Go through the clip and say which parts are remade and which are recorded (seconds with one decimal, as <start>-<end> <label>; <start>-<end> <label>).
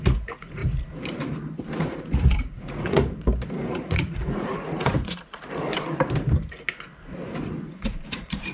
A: 0.0-0.6 remade; 0.6-1.8 recorded; 1.8-3.0 remade; 3.0-3.7 recorded; 3.7-5.7 remade; 5.7-7.4 recorded; 7.4-8.5 remade